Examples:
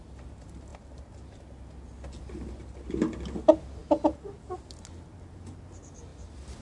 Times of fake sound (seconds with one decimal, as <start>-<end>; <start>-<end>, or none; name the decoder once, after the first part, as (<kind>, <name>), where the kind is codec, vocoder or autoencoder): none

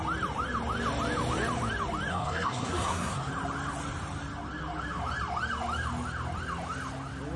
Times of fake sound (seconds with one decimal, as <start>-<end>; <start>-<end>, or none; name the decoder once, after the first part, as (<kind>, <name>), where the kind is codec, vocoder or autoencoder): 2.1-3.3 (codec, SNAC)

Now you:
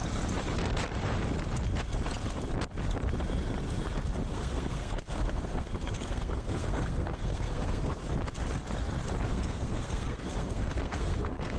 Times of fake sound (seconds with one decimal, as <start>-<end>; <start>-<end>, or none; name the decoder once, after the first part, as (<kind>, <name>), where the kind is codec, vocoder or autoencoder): 4.3-8.0 (codec, SNAC); 9.3-11.6